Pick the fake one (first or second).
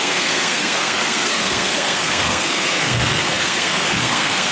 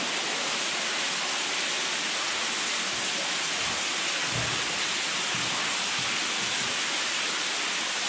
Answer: first